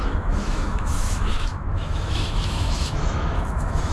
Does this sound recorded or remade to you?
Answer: remade